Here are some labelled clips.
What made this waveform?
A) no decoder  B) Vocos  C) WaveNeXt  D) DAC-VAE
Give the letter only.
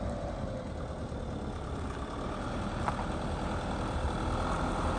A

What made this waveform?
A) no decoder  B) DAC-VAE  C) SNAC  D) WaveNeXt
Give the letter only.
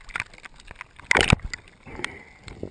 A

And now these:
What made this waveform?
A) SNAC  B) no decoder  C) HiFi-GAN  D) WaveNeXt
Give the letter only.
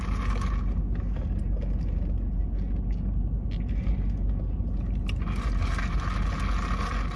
B